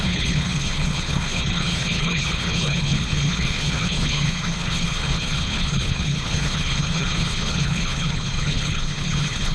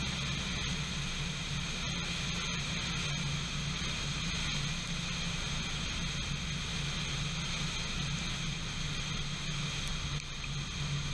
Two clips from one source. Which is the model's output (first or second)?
first